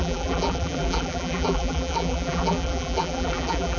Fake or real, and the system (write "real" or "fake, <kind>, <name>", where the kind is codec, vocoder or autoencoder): fake, vocoder, BigVGAN v2